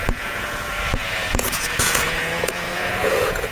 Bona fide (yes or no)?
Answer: no